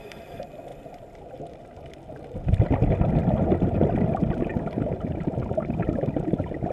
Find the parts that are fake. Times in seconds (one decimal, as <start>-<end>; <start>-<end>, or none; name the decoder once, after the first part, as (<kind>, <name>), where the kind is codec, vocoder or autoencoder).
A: 0.7-1.4 (vocoder, BigVGAN v2); 4.5-6.7